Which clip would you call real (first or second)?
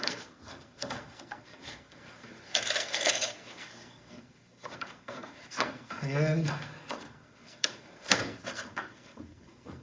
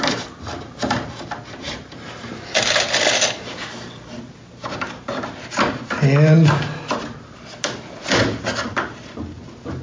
second